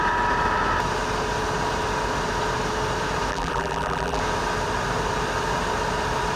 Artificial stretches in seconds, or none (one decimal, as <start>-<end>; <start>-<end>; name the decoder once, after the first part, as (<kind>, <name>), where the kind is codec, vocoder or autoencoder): 3.3-4.2 (vocoder, BigVGAN v2)